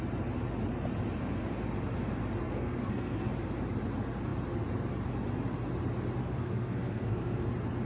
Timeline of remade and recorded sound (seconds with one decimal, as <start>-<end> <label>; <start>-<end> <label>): 0.0-2.4 recorded; 2.4-3.3 remade; 3.3-6.2 recorded; 6.2-7.5 remade; 7.5-7.9 recorded